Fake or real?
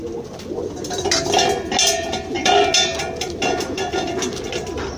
real